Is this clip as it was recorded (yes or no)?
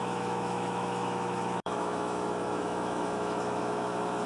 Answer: no